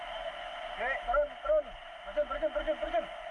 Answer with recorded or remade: recorded